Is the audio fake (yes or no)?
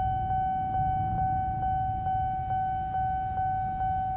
no